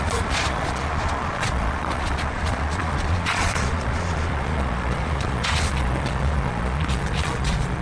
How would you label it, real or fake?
fake